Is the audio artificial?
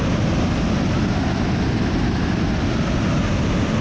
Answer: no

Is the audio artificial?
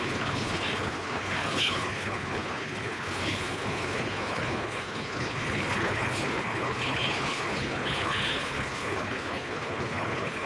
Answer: yes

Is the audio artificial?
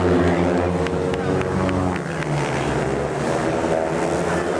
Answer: no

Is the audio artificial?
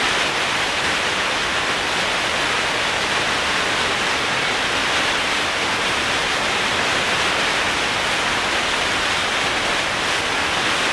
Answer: no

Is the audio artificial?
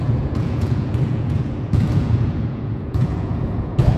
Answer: yes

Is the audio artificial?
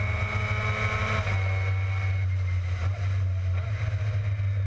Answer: no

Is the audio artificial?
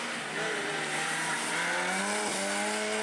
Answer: no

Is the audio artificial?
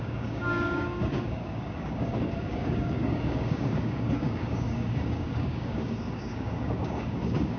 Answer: yes